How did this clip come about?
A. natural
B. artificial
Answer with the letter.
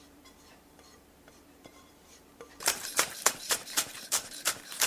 B